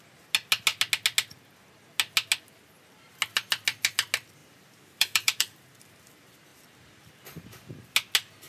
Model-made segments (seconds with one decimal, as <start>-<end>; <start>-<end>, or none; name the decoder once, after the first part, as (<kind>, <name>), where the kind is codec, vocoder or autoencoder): 4.4-6.1 (vocoder, BigVGAN v2); 6.5-7.1